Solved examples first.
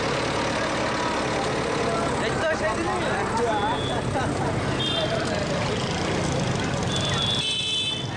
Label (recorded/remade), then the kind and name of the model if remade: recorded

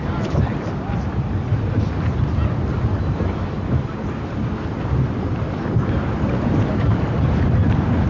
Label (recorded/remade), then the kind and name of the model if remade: recorded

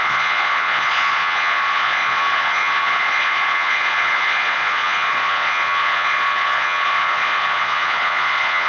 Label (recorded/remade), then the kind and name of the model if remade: remade, vocoder, Vocos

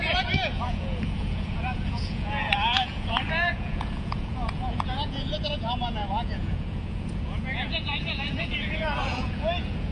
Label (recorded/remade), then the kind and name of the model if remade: remade, vocoder, Vocos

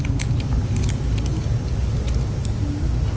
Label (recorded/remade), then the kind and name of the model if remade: recorded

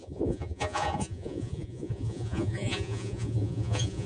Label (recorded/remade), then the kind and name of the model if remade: remade, vocoder, Vocos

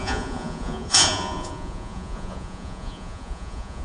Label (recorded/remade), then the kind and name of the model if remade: remade, vocoder, Vocos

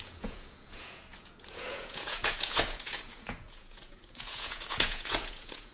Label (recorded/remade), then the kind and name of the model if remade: remade, vocoder, Vocos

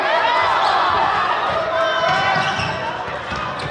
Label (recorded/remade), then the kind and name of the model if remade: remade, vocoder, Vocos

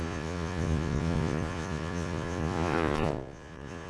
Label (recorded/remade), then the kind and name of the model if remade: remade, vocoder, Vocos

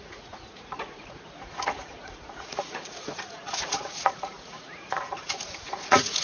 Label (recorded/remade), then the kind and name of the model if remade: remade, vocoder, Vocos